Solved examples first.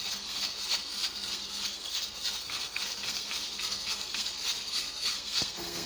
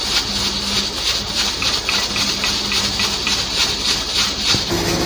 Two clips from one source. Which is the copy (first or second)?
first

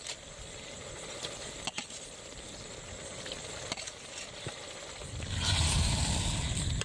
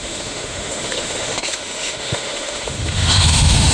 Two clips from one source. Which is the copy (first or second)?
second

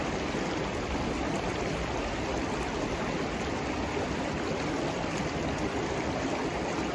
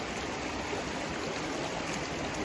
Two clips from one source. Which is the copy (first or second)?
second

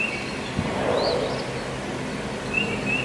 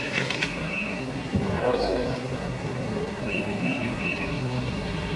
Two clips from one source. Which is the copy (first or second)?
second